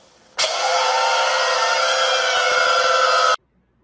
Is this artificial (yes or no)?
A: no